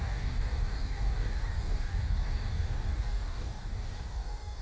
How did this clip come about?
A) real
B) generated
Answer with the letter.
B